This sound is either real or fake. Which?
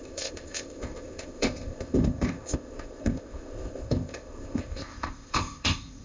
fake